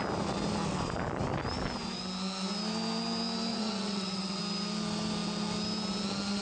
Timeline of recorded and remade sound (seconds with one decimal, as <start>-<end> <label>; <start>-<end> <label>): 0.0-3.5 recorded; 3.5-4.4 remade; 4.4-6.4 recorded